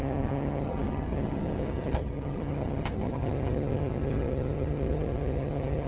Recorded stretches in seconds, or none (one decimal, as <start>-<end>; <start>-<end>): none